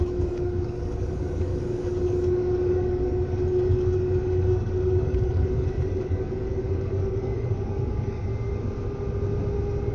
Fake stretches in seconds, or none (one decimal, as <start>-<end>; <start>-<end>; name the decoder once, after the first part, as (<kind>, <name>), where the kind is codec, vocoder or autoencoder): 0.0-8.3 (codec, DAC)